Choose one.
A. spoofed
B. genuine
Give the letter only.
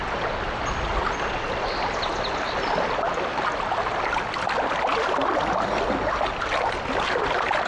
B